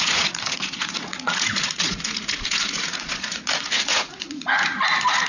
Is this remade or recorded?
remade